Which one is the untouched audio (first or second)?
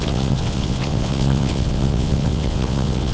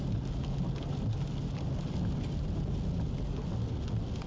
second